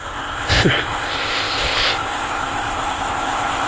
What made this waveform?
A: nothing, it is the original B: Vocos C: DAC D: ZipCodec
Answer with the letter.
D